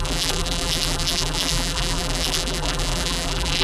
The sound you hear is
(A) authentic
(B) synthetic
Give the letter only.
B